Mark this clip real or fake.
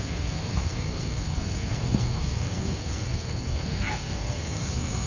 fake